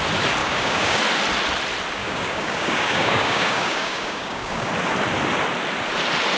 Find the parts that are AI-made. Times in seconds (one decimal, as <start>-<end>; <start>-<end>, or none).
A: 0.4-1.0; 2.0-4.7